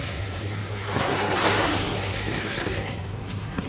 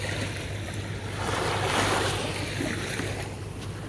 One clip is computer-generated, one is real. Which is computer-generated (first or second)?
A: first